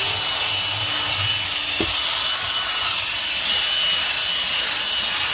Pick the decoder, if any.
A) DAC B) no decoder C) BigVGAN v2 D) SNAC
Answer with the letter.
B